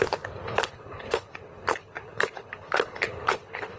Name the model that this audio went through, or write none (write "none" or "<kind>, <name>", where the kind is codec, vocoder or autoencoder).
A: codec, HILCodec